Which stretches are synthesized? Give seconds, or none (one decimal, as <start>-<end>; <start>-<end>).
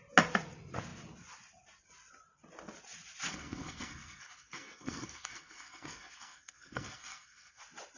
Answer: 3.3-7.6